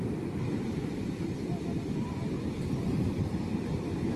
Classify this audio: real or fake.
real